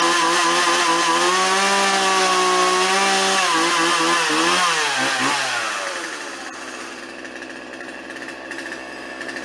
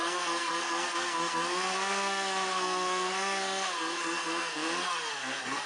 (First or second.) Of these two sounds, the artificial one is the second